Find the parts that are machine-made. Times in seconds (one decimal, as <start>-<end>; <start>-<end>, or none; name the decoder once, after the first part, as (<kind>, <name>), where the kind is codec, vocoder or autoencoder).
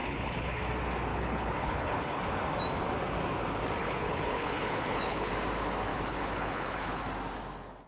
0.0-0.6 (codec, HILCodec); 1.1-2.2; 3.8-5.3; 5.9-7.0